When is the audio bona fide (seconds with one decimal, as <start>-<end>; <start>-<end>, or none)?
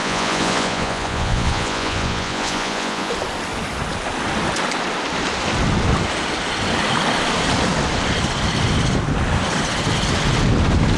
3.1-11.0